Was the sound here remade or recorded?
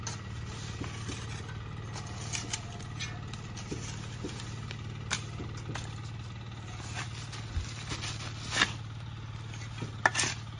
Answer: recorded